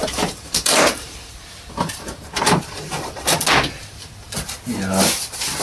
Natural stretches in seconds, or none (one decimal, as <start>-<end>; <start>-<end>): 3.4-5.6